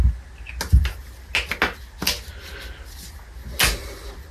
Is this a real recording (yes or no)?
yes